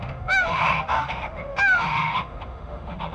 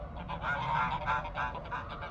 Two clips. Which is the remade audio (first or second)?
first